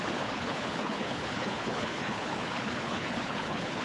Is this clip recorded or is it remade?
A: remade